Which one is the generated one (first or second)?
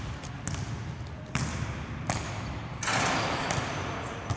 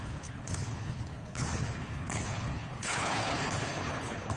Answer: second